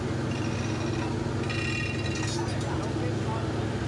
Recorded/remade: recorded